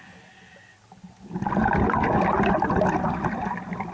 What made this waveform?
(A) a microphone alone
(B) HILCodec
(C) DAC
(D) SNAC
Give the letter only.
A